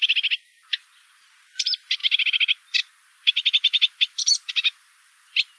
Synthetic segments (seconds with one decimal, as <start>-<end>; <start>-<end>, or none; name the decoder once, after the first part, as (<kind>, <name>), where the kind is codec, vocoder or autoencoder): 0.0-1.3 (vocoder, BigVGAN v2)